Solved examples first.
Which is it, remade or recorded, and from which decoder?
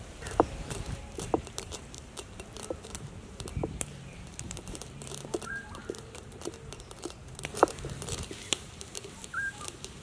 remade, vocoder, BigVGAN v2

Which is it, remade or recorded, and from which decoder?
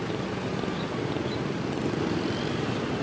recorded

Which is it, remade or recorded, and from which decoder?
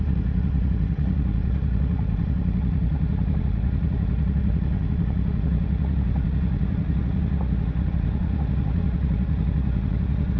remade, vocoder, Vocos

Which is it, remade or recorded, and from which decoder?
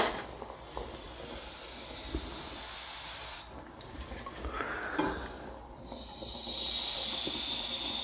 recorded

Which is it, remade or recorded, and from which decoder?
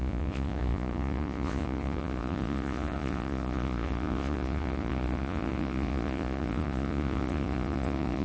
remade, vocoder, Vocos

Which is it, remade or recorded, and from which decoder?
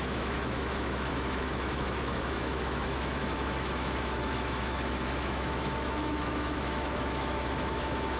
remade, autoencoder, DAC-VAE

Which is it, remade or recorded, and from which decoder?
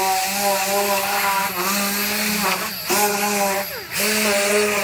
recorded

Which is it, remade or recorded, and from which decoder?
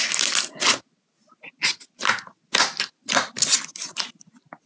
recorded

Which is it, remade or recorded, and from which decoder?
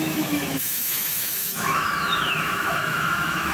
remade, autoencoder, DAC-VAE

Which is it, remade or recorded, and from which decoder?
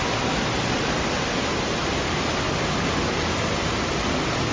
recorded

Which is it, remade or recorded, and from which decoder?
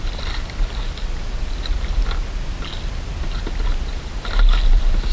recorded